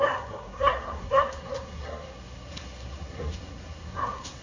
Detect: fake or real fake